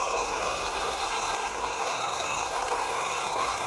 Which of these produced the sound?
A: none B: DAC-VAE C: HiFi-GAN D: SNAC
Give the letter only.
D